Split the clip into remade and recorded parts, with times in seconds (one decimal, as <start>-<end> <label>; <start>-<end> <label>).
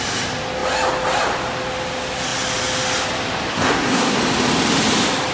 0.0-3.5 recorded; 3.5-4.2 remade; 4.2-5.3 recorded